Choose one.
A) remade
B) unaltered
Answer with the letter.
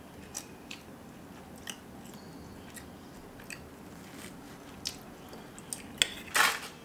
B